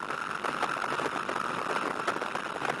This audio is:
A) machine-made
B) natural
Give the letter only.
B